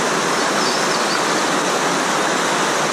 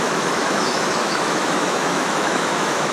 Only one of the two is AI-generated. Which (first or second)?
second